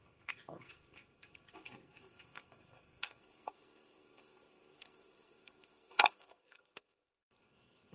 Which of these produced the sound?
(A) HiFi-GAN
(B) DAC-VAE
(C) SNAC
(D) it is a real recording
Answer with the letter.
C